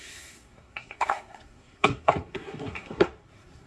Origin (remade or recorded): remade